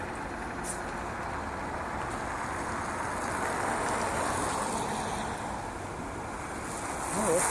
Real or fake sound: real